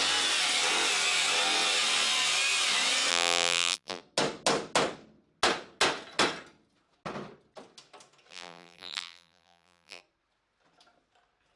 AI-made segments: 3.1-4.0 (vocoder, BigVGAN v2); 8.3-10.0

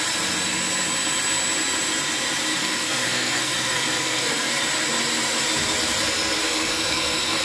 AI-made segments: 2.5-4.6 (codec, SNAC); 6.4-7.4